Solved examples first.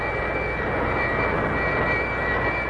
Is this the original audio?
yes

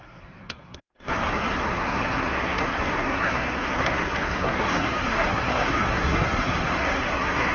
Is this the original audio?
no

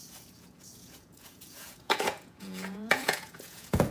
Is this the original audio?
no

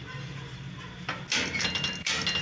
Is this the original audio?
yes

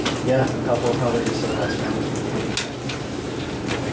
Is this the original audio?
yes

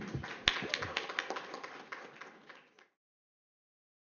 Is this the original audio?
yes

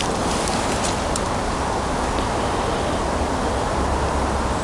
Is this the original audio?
yes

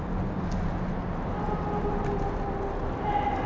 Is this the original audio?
yes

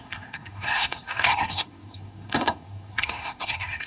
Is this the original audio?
no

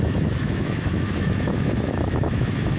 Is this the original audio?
no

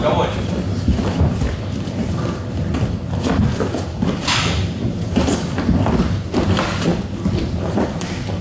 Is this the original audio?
yes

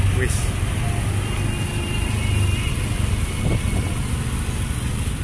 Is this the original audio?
yes